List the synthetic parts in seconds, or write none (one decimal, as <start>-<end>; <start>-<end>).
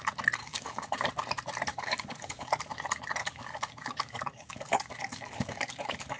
0.4-1.1; 1.7-2.5; 3.2-6.2